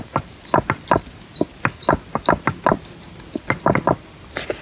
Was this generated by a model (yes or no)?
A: no